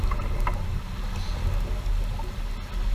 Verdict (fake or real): real